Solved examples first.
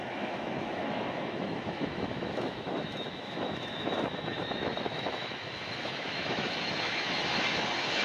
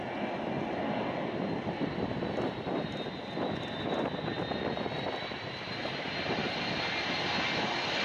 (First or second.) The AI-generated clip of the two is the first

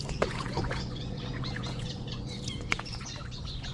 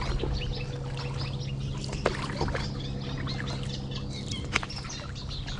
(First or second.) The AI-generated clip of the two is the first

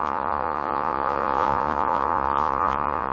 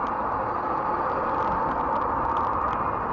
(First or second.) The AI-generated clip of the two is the first